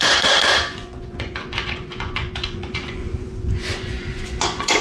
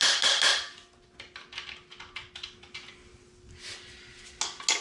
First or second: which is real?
second